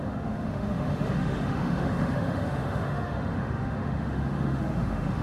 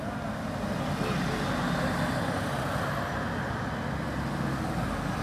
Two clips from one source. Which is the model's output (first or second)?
first